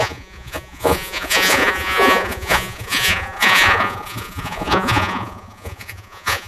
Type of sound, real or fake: fake